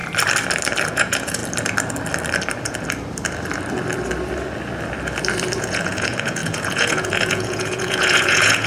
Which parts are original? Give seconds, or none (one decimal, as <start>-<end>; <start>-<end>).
0.0-0.9; 1.4-5.6